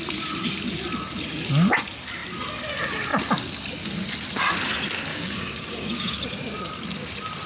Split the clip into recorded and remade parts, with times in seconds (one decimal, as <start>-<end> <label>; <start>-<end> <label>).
0.0-5.1 recorded; 5.1-6.1 remade; 6.1-7.5 recorded